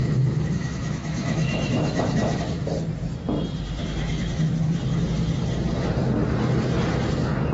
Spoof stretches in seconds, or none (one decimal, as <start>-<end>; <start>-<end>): 0.0-2.7; 3.8-4.6